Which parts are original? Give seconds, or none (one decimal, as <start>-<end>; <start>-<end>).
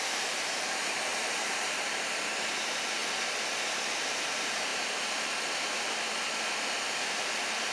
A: 3.0-3.7